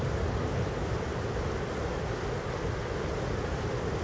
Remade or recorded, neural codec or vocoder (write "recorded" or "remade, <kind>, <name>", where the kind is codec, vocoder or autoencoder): recorded